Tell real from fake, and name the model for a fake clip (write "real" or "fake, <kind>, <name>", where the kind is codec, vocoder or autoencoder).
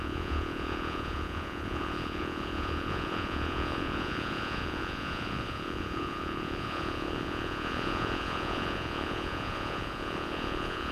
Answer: fake, vocoder, Vocos